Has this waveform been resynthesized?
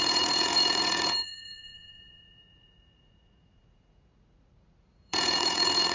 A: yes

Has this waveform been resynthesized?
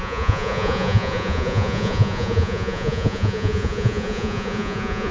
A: yes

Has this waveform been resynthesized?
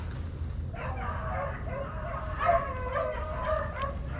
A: no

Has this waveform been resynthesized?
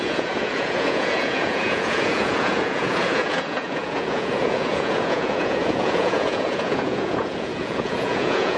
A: yes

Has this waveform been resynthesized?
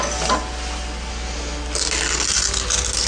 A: no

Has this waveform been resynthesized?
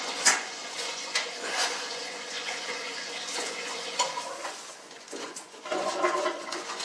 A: yes